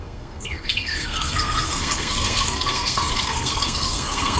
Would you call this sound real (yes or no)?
no